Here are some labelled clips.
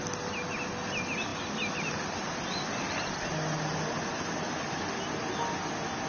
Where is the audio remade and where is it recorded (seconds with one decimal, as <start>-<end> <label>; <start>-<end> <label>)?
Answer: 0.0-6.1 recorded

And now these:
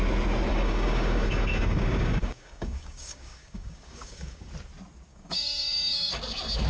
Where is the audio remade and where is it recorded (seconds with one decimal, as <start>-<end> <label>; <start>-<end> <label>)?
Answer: 0.0-0.5 recorded; 0.5-4.5 remade; 4.5-5.1 recorded; 5.1-6.1 remade; 6.1-6.7 recorded

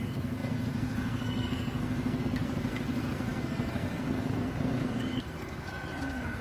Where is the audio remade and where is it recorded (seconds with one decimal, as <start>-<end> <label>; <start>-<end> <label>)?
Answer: 0.0-6.4 remade

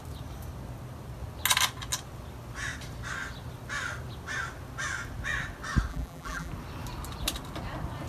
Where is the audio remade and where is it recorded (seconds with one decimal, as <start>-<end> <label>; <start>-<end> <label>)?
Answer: 0.0-5.9 recorded; 5.9-6.5 remade; 6.5-8.1 recorded

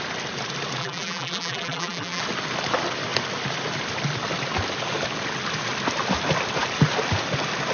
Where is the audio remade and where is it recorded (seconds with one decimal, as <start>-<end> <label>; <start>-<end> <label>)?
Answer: 0.0-0.8 recorded; 0.8-2.2 remade; 2.2-7.7 recorded

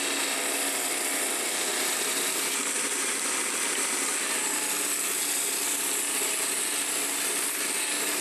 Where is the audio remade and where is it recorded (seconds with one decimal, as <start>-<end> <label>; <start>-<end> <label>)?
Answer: 0.0-8.2 recorded